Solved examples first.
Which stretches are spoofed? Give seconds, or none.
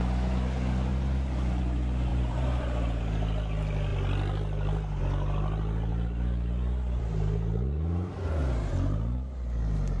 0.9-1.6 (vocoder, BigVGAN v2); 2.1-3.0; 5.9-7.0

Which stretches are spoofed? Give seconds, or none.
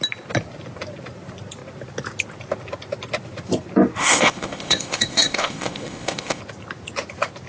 4.0-6.4 (codec, ZipCodec)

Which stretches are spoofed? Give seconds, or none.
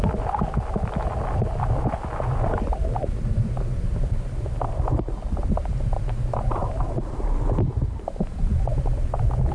none